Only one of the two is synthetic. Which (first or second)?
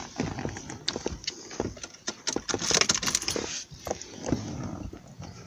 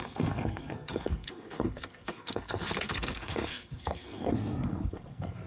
second